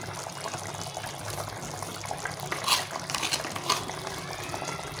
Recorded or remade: recorded